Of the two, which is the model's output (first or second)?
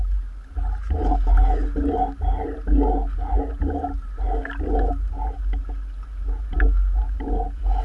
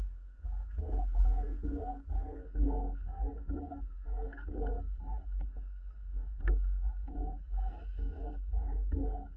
second